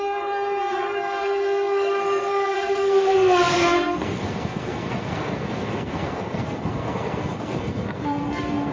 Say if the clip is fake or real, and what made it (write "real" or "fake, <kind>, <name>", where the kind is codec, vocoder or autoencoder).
fake, codec, SNAC